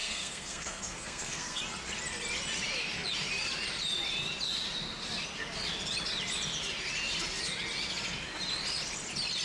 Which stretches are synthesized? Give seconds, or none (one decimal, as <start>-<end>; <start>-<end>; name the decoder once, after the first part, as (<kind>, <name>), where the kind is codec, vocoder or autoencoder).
0.0-1.6 (codec, SNAC)